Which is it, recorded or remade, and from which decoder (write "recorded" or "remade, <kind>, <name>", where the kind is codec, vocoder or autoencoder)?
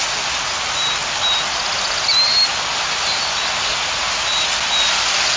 recorded